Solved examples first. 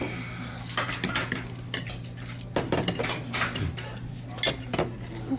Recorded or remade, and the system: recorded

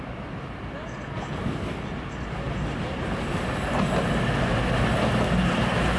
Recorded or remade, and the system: recorded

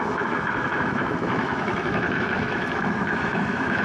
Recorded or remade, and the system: remade, autoencoder, DAC-VAE